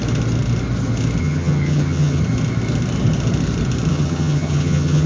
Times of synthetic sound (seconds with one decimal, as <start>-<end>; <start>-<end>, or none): 1.2-2.2; 3.9-5.1